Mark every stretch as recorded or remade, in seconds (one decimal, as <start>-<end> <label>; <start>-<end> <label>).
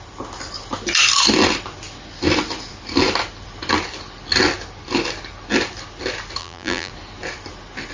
0.0-6.4 recorded; 6.4-6.9 remade; 6.9-7.9 recorded